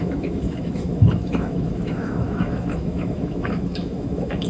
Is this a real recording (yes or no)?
no